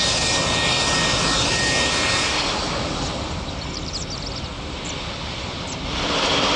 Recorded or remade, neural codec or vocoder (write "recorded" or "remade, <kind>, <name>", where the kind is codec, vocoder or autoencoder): recorded